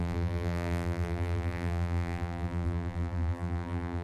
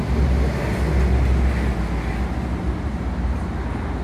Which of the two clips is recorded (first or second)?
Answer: second